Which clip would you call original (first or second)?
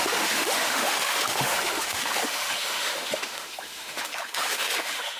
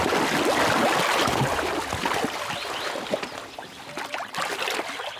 second